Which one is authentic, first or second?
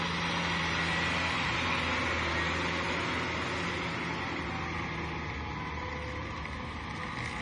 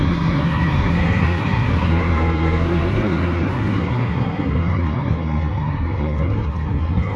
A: first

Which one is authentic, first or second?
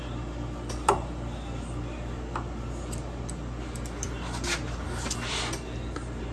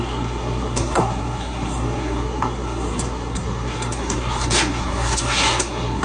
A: first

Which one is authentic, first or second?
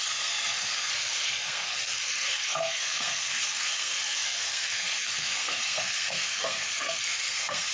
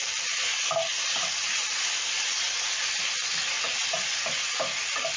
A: second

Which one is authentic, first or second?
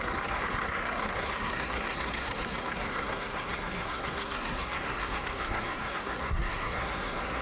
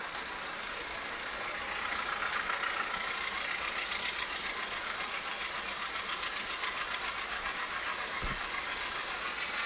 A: second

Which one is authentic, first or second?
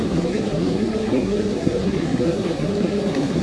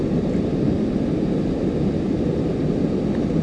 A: second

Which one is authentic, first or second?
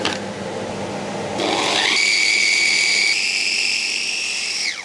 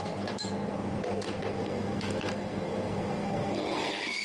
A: first